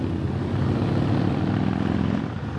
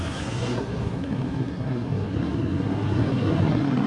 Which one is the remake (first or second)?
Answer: second